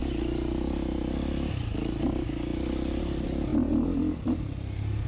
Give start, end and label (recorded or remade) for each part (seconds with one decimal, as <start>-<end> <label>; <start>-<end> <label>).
0.0-5.1 recorded